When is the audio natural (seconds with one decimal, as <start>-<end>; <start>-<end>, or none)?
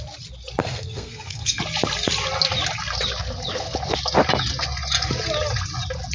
0.0-0.6; 1.6-6.1